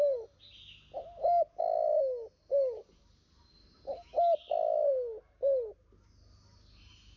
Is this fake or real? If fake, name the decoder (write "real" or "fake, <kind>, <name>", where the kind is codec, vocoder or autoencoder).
real